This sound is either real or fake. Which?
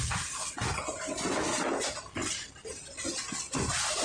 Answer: real